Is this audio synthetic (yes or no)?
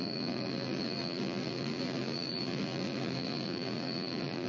yes